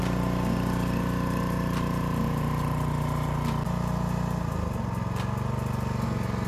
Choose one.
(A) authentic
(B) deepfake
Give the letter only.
A